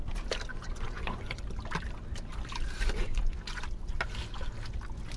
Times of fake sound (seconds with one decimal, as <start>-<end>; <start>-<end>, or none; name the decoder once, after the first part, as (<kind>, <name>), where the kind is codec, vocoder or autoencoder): 0.5-1.4 (vocoder, Vocos); 3.0-3.6